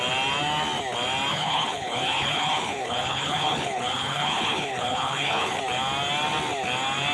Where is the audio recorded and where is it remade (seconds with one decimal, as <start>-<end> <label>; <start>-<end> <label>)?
0.0-1.3 recorded; 1.3-5.6 remade; 5.6-7.1 recorded